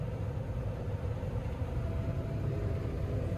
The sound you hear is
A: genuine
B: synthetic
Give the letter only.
A